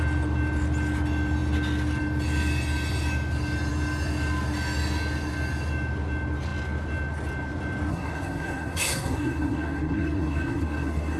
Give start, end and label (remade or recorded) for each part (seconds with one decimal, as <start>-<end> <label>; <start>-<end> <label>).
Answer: 0.0-7.9 recorded; 7.9-11.2 remade